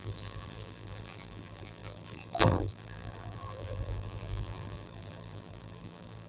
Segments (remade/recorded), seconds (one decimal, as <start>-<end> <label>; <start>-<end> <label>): 0.0-6.3 remade